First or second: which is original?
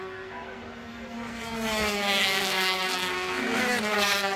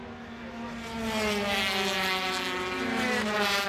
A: second